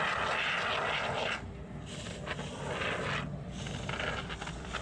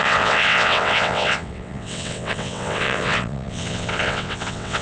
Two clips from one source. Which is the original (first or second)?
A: first